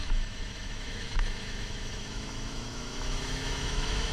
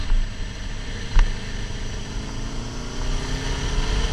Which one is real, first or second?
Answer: second